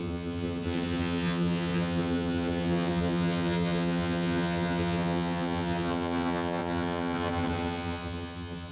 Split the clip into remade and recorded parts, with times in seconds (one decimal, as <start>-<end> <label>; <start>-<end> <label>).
0.0-8.7 remade

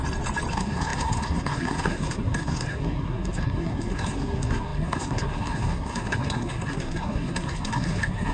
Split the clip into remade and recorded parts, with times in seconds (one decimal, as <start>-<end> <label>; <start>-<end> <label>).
0.0-0.5 recorded; 0.5-8.3 remade

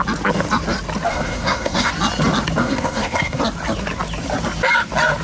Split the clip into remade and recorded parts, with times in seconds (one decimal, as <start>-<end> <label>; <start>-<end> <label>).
0.0-1.1 recorded; 1.1-1.9 remade; 1.9-2.6 recorded; 2.6-3.4 remade; 3.4-5.2 recorded

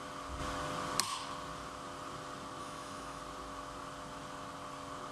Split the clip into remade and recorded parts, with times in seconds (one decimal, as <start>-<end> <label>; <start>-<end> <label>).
0.0-2.6 recorded; 2.6-3.2 remade; 3.2-5.1 recorded

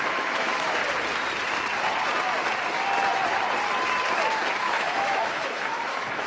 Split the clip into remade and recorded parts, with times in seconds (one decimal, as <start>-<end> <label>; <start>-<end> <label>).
0.0-0.8 remade; 0.8-4.6 recorded; 4.6-6.3 remade

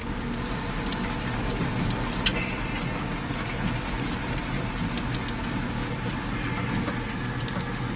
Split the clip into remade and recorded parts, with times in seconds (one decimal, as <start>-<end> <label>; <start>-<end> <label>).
0.0-8.0 recorded

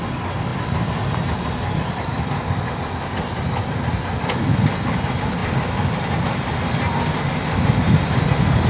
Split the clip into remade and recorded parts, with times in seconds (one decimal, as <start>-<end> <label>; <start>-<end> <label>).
0.0-8.7 recorded

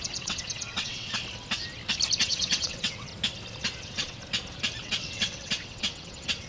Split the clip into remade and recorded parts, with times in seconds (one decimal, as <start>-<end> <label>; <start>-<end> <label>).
0.0-1.2 remade; 1.2-2.2 recorded; 2.2-3.1 remade; 3.1-3.8 recorded; 3.8-4.2 remade; 4.2-4.8 recorded; 4.8-6.5 remade